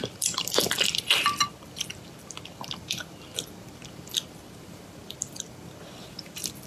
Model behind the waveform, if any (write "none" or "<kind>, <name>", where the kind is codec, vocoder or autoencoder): vocoder, BigVGAN v2